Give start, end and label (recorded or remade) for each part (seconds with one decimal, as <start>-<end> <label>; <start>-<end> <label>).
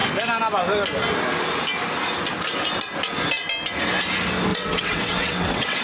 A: 0.0-4.5 recorded; 4.5-5.8 remade